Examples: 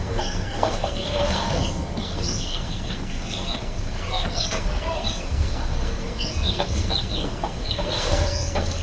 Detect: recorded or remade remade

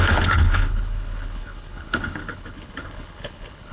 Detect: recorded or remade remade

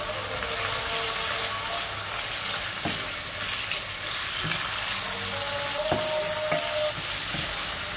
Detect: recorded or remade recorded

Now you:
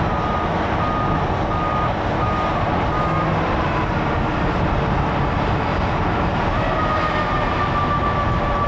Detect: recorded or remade recorded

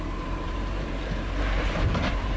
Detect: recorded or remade remade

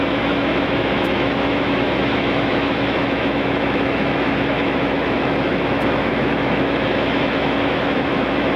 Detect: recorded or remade remade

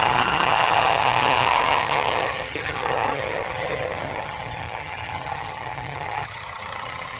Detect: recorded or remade remade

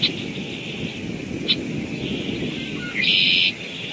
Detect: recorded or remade recorded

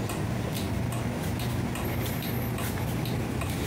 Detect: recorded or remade recorded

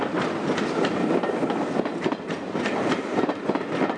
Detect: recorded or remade recorded